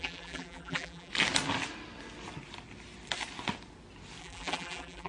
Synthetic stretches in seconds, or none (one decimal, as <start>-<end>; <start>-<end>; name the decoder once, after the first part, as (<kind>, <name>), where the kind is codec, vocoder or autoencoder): 0.0-1.1 (vocoder, BigVGAN v2); 4.2-5.1